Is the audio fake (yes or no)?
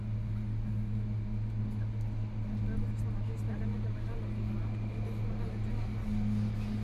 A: no